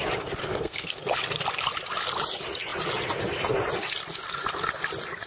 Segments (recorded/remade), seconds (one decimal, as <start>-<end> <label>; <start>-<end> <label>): 0.0-0.4 recorded; 0.4-1.2 remade; 1.2-5.3 recorded